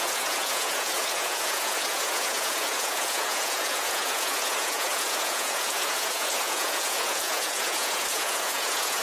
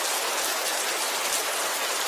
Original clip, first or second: second